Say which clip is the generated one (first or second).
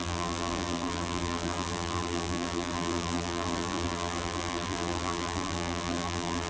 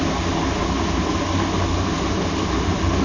first